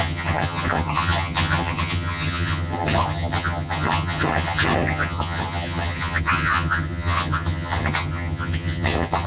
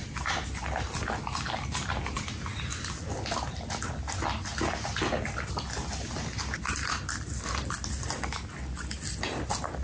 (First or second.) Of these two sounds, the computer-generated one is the first